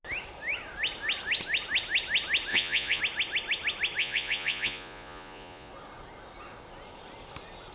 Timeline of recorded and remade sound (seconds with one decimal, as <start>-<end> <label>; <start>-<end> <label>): 0.0-2.5 recorded; 2.5-3.0 remade; 3.0-4.0 recorded; 4.0-5.7 remade; 5.7-7.7 recorded